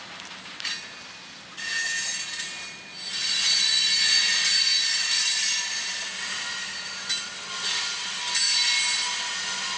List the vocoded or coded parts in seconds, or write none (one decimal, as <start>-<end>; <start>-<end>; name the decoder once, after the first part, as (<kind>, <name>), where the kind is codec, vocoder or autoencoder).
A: none